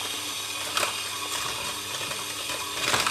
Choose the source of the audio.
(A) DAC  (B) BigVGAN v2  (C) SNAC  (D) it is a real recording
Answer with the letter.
D